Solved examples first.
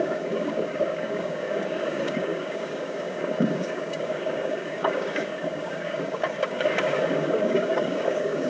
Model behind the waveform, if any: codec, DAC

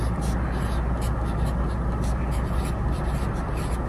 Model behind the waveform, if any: none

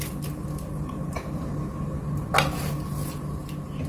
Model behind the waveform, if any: none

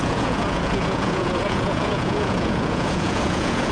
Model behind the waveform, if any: vocoder, Vocos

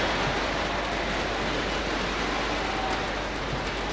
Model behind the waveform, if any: none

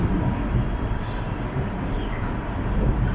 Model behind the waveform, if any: vocoder, BigVGAN v2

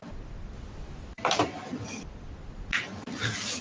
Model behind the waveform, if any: none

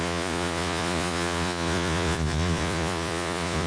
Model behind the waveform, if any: vocoder, Vocos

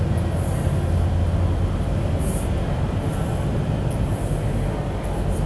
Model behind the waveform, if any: none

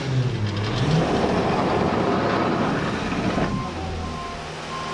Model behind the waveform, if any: none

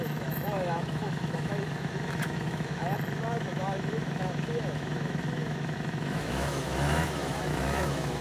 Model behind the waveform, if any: autoencoder, DAC-VAE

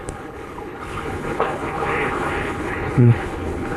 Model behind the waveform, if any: codec, HILCodec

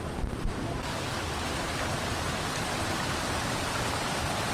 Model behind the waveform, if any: none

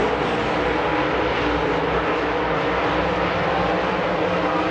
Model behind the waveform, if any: none